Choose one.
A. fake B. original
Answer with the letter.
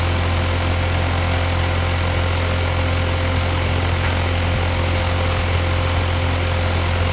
B